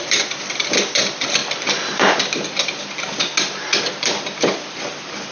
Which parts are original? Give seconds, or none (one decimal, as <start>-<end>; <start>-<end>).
1.4-3.8